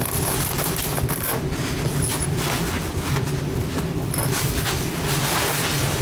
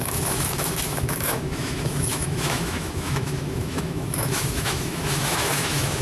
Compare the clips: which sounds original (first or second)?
first